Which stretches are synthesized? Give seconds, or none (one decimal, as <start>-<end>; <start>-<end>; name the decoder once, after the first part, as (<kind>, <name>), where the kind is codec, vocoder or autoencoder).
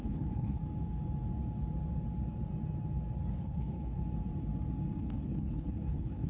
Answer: 0.0-0.6 (codec, HILCodec); 3.3-4.0; 5.0-6.3